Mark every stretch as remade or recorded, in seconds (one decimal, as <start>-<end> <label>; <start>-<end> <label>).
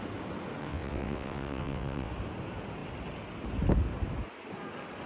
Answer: 0.0-0.6 recorded; 0.6-2.1 remade; 2.1-5.1 recorded